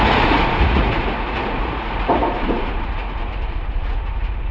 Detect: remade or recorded remade